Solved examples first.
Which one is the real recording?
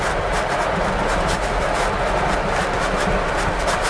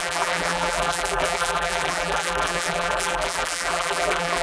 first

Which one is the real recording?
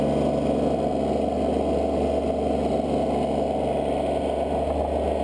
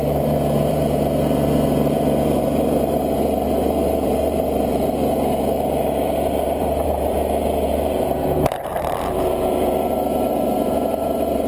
first